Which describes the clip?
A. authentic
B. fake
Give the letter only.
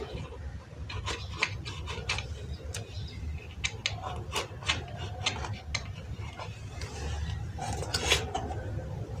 A